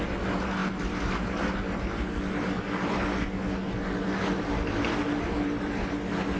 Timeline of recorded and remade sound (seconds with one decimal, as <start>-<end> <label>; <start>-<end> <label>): 0.0-6.4 recorded